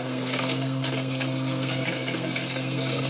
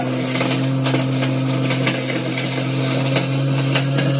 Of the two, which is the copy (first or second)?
first